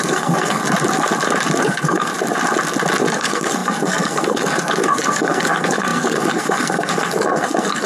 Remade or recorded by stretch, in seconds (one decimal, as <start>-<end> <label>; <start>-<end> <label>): 0.0-0.6 remade; 0.6-1.6 recorded; 1.6-2.1 remade; 2.1-3.1 recorded; 3.1-7.9 remade